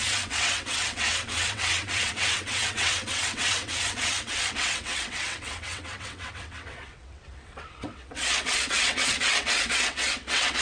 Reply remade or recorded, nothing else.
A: remade